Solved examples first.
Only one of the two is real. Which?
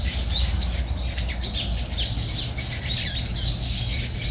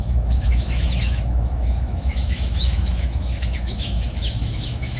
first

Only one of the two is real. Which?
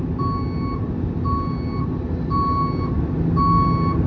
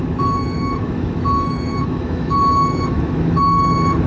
first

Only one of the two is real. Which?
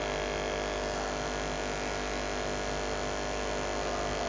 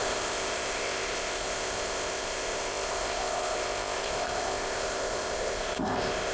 first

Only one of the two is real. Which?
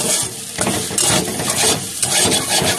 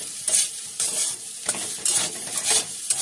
first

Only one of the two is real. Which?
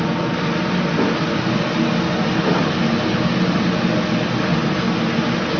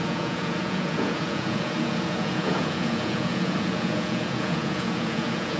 first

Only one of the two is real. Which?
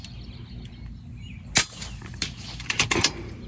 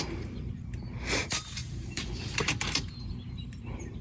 first